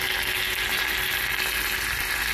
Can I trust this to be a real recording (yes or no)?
yes